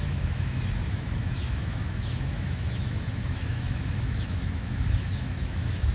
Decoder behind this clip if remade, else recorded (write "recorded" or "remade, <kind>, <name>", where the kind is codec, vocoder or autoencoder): remade, autoencoder, DAC-VAE